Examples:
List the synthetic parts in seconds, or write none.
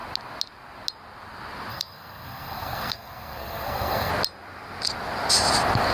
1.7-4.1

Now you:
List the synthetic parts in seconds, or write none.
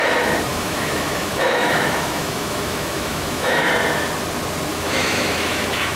0.5-3.7; 4.7-6.0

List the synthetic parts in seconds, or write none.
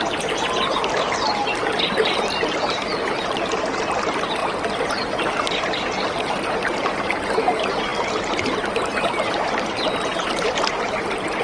none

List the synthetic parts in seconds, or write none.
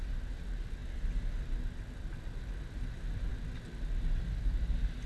none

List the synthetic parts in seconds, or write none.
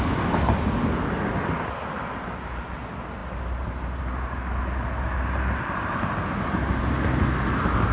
none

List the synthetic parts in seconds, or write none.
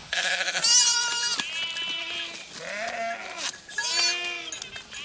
0.0-0.6